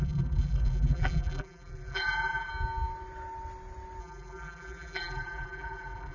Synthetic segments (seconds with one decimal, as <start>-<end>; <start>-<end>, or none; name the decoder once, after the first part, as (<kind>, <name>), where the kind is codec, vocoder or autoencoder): 0.0-2.5 (vocoder, BigVGAN v2); 4.0-6.1

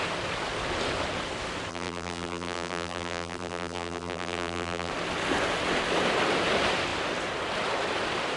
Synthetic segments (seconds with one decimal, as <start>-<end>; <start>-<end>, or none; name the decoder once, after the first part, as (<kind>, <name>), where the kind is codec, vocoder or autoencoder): 1.7-4.9 (vocoder, BigVGAN v2)

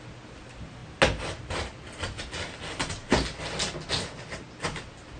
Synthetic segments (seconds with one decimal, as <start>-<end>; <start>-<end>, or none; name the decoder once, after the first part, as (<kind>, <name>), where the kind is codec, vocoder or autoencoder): none

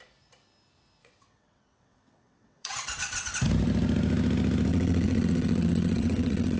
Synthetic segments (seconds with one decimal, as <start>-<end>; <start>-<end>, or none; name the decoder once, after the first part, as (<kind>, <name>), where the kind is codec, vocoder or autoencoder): 1.0-3.3 (vocoder, WaveNeXt); 4.7-6.6

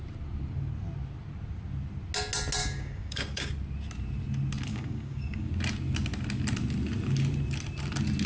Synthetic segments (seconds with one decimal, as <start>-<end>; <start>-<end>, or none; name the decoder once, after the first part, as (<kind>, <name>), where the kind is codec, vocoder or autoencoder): 2.6-3.5 (codec, DAC); 4.7-5.5